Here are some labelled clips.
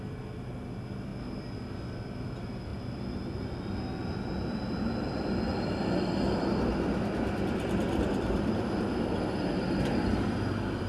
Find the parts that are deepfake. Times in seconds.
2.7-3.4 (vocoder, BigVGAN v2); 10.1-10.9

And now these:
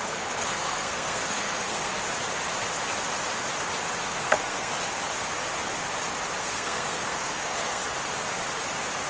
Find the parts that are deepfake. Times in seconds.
0.0-1.9 (codec, SNAC); 4.0-4.7; 6.4-7.8